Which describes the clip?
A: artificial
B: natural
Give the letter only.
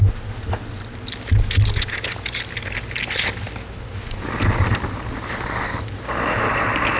B